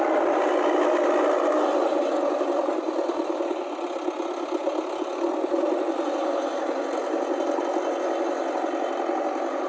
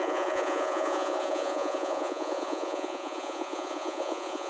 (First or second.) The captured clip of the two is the first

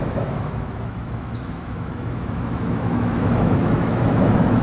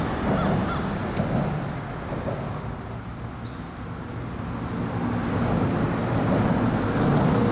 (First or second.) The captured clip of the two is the second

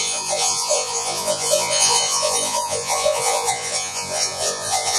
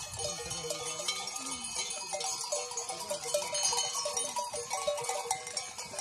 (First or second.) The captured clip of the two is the second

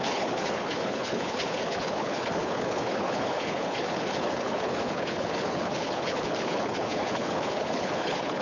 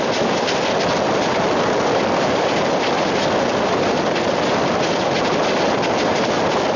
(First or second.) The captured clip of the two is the second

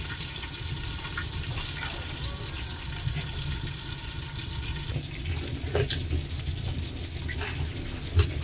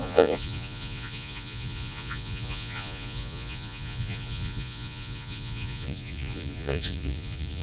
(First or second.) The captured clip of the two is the first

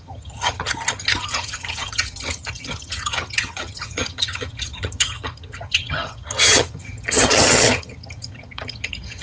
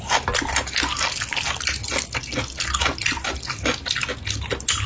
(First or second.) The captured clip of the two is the second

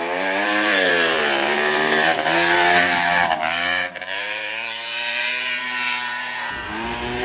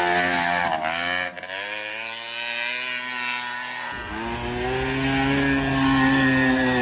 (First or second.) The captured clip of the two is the second